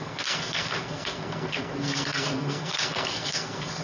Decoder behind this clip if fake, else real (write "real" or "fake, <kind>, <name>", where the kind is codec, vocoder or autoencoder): fake, codec, SNAC